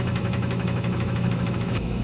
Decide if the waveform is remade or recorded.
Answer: remade